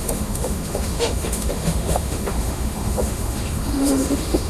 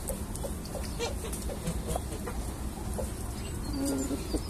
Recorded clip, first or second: second